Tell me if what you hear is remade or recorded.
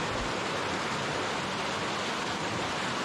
recorded